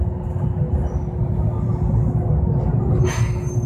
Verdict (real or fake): real